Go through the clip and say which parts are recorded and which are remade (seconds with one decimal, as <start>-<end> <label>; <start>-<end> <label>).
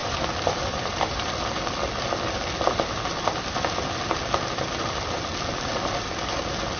0.0-1.3 remade; 1.3-6.8 recorded